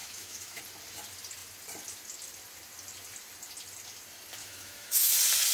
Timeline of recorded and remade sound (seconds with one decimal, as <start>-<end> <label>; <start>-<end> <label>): 0.0-0.6 remade; 0.6-4.4 recorded; 4.4-5.1 remade; 5.1-5.5 recorded